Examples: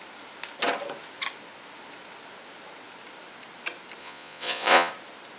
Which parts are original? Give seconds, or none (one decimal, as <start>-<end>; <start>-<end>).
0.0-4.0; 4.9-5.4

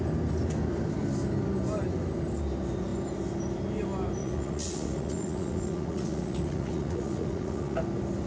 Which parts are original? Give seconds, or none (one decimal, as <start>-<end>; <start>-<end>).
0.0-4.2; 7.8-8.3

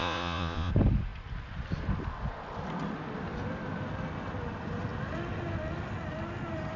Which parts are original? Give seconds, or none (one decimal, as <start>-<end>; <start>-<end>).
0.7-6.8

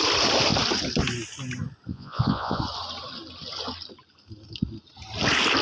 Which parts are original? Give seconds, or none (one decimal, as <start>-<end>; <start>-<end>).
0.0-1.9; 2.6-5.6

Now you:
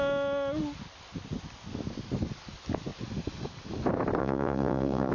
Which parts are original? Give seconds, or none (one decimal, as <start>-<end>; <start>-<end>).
0.0-4.2

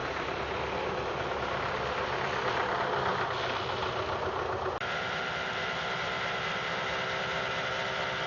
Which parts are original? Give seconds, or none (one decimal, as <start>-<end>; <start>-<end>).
0.0-8.3